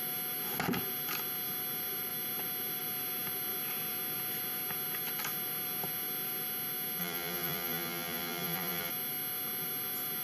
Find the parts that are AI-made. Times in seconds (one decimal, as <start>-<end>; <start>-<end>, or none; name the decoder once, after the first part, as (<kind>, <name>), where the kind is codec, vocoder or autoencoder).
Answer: 7.0-8.9 (vocoder, BigVGAN v2)